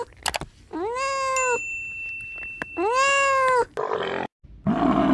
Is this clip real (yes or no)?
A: yes